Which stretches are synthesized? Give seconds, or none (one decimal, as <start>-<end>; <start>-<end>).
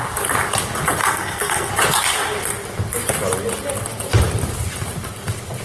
1.0-1.7